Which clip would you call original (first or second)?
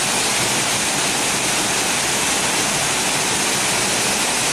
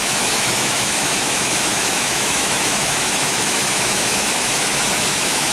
first